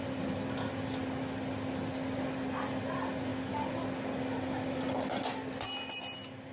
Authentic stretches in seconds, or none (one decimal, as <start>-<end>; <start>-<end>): 0.0-6.5